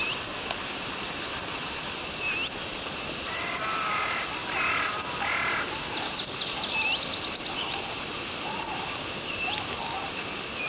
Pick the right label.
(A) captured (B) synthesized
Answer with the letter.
A